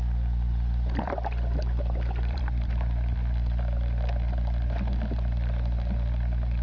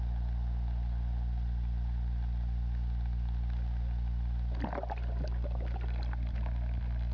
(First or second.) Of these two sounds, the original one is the second